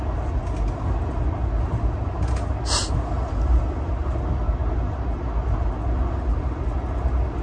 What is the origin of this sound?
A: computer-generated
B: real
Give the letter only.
B